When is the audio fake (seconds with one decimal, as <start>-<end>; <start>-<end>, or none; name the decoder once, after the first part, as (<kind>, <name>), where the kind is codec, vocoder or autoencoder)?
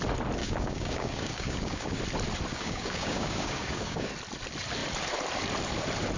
0.4-2.0 (codec, DAC); 2.5-4.1